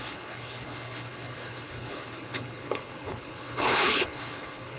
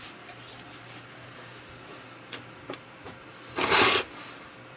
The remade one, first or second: first